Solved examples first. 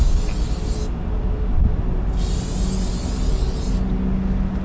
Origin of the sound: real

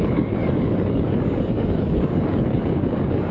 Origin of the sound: fake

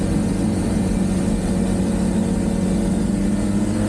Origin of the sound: real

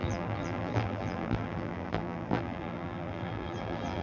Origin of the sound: fake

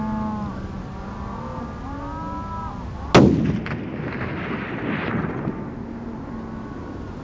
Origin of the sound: real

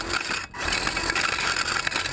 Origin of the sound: real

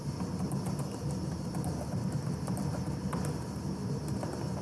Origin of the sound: real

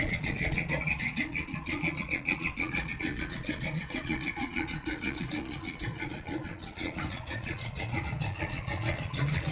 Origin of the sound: fake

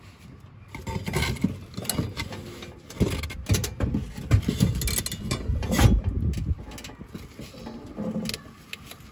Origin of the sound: real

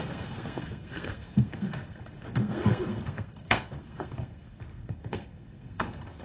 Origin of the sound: fake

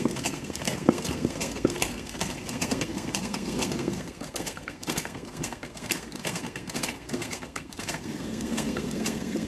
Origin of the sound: fake